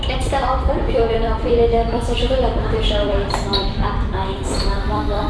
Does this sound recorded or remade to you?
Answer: remade